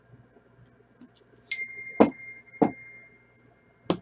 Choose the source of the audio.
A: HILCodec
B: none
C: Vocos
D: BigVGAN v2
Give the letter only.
B